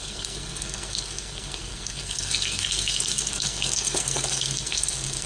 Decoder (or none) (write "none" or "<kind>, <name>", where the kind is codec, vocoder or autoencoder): codec, SNAC